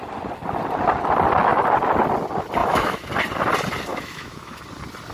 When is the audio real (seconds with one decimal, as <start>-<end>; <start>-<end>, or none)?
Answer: 0.0-2.6; 3.1-3.9; 4.6-5.1